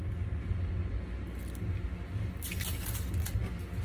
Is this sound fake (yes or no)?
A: no